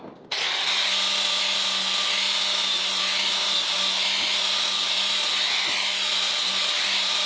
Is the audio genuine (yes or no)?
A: yes